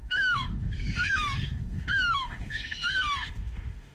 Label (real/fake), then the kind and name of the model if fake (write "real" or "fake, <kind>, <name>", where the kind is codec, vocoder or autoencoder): fake, autoencoder, DAC-VAE